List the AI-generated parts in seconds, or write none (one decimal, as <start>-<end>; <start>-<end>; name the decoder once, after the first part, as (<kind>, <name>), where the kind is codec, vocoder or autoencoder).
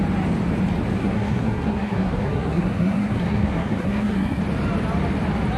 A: 1.0-4.4 (codec, SNAC)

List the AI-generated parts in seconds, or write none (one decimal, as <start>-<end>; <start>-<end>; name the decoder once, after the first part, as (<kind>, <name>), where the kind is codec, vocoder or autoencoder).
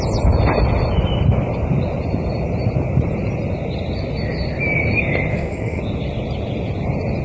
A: 5.3-5.8 (codec, SNAC)